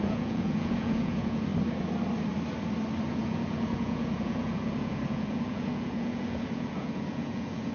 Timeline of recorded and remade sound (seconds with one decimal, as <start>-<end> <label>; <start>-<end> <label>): 0.0-1.5 remade; 1.5-3.1 recorded; 3.1-7.7 remade